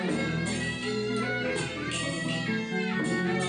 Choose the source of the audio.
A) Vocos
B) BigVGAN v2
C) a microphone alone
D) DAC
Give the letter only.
C